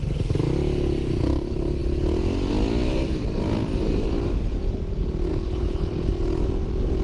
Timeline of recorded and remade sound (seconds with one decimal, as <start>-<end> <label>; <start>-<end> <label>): 0.0-5.3 recorded; 5.3-6.1 remade; 6.1-7.0 recorded